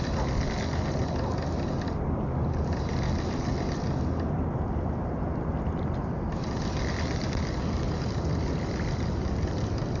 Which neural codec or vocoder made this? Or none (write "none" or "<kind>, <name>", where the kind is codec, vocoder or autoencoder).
none